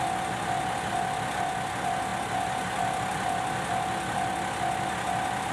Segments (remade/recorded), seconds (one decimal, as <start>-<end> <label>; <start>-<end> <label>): 0.0-5.5 recorded